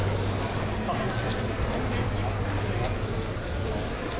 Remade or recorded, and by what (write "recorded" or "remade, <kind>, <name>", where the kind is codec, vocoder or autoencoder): recorded